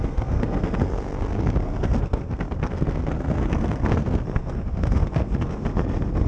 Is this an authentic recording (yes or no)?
no